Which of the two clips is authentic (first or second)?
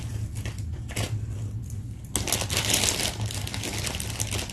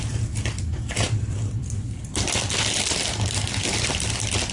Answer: first